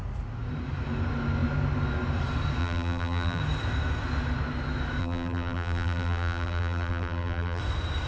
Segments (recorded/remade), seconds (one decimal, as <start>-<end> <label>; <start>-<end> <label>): 0.0-2.6 recorded; 2.6-3.4 remade; 3.4-5.0 recorded; 5.0-7.6 remade; 7.6-8.1 recorded